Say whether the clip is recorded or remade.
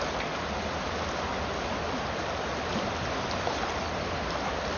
recorded